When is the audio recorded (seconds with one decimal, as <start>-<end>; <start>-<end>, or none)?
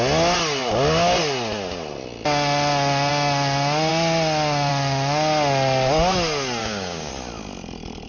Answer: 0.0-6.6; 7.1-8.1